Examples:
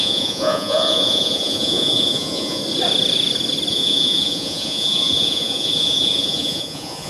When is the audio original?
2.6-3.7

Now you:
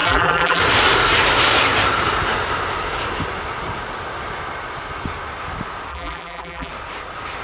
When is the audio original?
0.6-5.9; 6.7-7.4

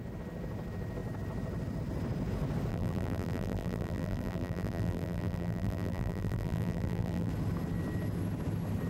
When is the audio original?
0.0-2.7; 7.3-8.9

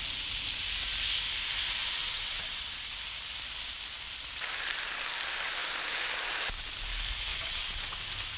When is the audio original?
0.0-2.0; 2.9-7.3; 8.0-8.4

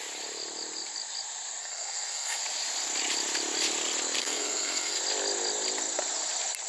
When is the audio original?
0.0-1.6; 2.4-4.2; 5.0-6.7